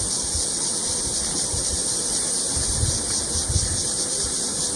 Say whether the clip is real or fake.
real